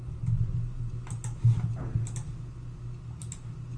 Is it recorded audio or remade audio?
recorded